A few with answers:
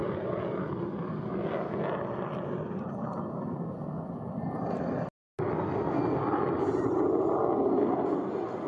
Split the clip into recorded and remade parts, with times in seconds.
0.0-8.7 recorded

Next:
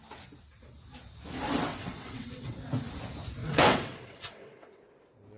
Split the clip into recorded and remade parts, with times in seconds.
0.0-1.7 recorded; 1.7-2.7 remade; 2.7-3.4 recorded; 3.4-4.8 remade; 4.8-5.4 recorded

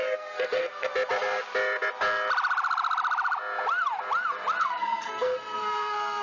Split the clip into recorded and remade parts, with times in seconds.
0.0-0.9 remade; 0.9-4.6 recorded; 4.6-6.2 remade

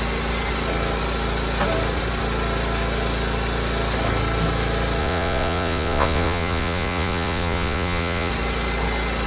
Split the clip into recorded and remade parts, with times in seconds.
0.0-5.0 recorded; 5.0-8.3 remade; 8.3-9.3 recorded

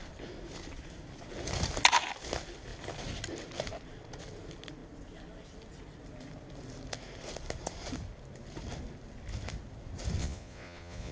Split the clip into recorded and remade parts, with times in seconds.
0.0-10.2 recorded; 10.2-11.1 remade

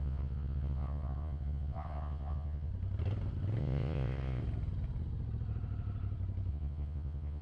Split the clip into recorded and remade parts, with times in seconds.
0.0-2.7 remade; 2.7-3.6 recorded; 3.6-4.4 remade; 4.4-6.5 recorded; 6.5-7.4 remade

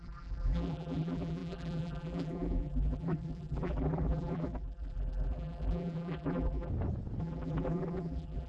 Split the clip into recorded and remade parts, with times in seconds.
0.0-6.7 remade; 6.7-7.2 recorded; 7.2-8.5 remade

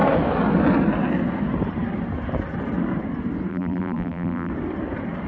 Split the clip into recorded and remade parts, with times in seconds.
0.0-3.5 recorded; 3.5-4.5 remade; 4.5-5.3 recorded